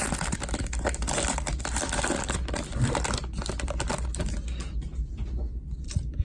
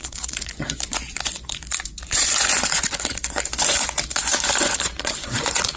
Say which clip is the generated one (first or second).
second